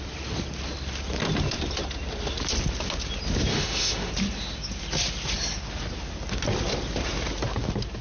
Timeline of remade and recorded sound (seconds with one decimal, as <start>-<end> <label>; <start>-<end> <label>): 0.0-3.5 recorded; 3.5-4.1 remade; 4.1-8.0 recorded